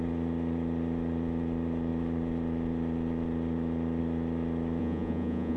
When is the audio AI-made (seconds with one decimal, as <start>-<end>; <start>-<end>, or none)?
4.8-5.6